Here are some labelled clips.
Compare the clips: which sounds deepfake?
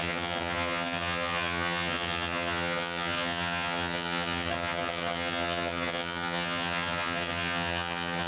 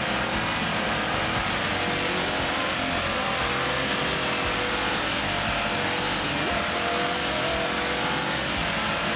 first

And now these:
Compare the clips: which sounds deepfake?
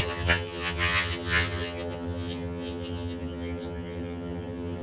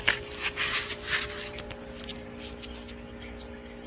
first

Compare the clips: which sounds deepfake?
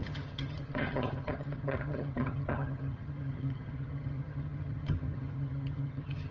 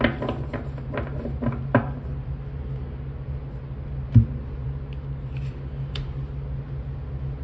first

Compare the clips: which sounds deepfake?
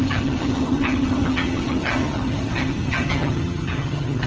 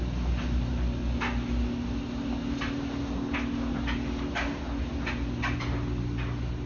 first